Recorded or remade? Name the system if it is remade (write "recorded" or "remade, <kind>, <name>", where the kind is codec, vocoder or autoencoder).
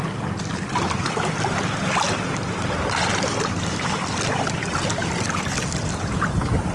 recorded